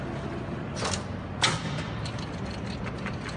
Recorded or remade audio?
recorded